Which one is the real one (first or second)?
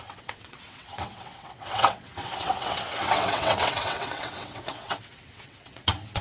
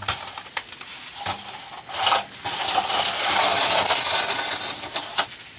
second